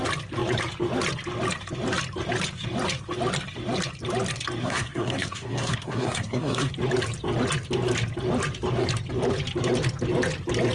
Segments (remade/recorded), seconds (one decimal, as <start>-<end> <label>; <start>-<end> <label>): 0.0-4.6 recorded; 4.6-6.7 remade; 6.7-10.7 recorded